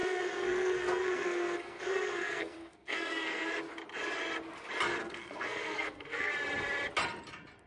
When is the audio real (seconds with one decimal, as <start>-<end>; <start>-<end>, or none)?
3.5-5.0; 6.3-7.7